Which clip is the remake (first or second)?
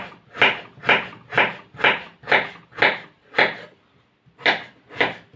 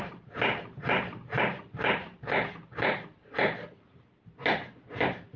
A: second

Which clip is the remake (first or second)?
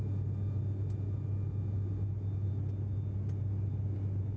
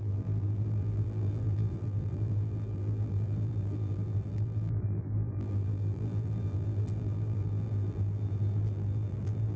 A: second